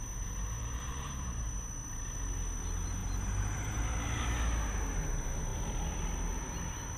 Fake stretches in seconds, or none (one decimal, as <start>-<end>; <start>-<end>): 0.6-1.5; 3.0-3.8